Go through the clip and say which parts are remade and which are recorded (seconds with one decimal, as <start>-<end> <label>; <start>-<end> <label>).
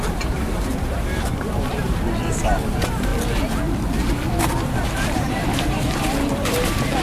0.0-3.1 remade; 3.1-4.4 recorded; 4.4-7.0 remade